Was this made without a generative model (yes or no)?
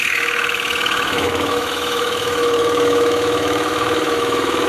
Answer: no